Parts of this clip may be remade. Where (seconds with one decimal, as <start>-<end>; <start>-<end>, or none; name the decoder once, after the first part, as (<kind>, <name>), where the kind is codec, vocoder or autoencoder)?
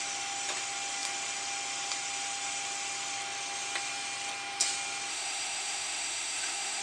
5.1-6.8 (autoencoder, DAC-VAE)